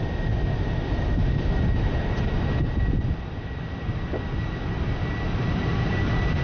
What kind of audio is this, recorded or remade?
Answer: recorded